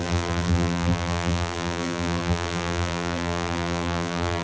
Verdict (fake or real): fake